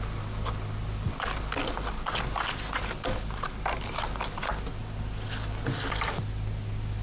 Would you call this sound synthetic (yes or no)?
no